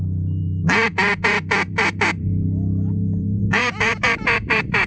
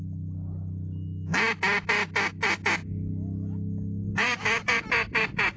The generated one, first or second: first